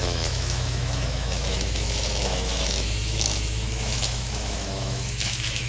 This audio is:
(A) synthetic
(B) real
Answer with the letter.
A